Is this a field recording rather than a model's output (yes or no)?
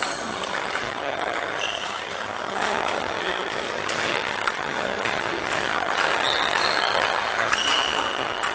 no